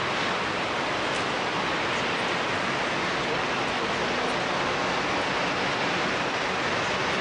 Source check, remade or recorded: recorded